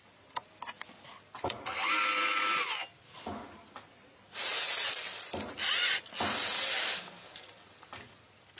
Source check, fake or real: real